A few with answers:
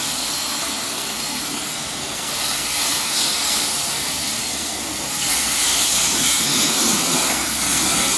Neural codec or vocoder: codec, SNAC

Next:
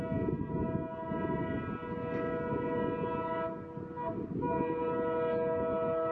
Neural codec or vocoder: none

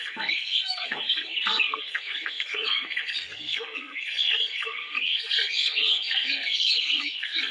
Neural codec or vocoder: codec, SNAC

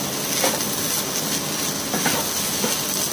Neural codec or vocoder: none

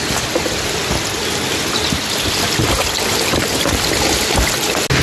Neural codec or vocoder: none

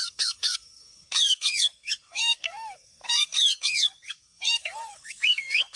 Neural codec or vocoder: codec, SNAC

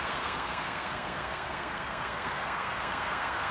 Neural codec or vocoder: codec, SNAC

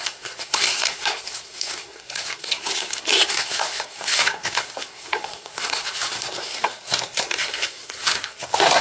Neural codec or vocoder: codec, SNAC